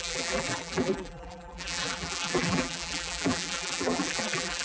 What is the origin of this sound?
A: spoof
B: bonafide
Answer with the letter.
A